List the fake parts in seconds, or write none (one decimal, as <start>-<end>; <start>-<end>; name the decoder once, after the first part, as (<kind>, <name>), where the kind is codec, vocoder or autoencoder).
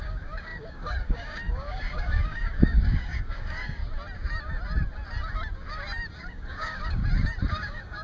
0.0-3.8 (codec, DAC); 6.2-7.0; 7.5-8.0